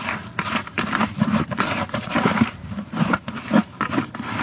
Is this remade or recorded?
remade